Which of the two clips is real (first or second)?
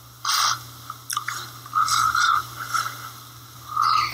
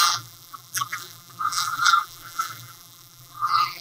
first